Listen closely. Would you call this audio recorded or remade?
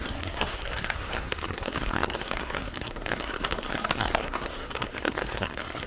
remade